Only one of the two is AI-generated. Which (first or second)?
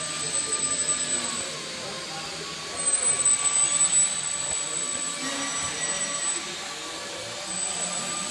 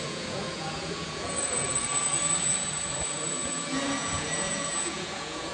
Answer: second